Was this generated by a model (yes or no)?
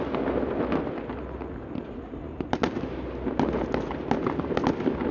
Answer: no